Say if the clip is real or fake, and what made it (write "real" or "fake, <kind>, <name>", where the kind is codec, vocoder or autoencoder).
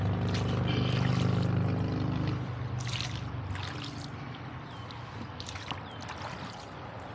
real